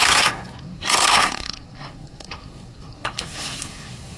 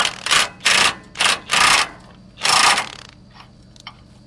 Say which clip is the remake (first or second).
first